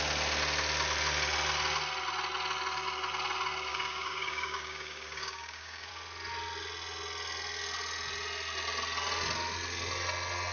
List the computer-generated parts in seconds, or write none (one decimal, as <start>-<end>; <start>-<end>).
3.7-5.9